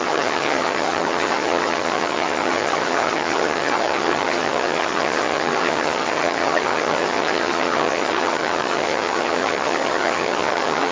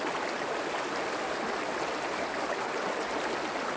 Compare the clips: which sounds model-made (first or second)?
first